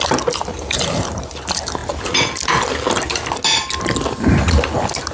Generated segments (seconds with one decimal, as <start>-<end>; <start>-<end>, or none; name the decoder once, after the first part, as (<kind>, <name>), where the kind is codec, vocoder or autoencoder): 0.5-1.0 (vocoder, BigVGAN v2)